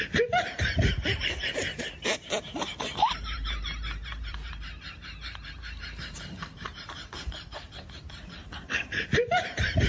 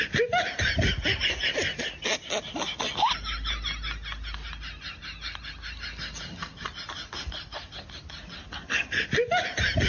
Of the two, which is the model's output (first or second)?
first